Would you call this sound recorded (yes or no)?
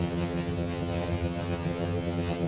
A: no